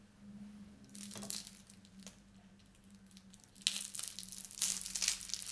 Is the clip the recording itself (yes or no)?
yes